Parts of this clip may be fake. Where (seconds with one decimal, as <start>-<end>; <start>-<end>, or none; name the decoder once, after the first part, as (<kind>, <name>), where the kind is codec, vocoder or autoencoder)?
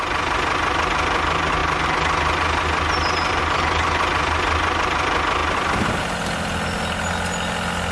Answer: none